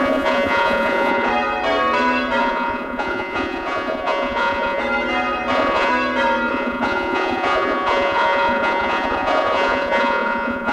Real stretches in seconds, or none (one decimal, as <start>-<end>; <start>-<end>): 1.3-2.4; 4.8-5.5; 5.9-6.5